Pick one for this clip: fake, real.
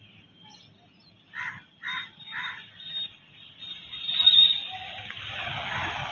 real